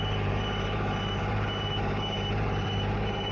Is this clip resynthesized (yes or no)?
yes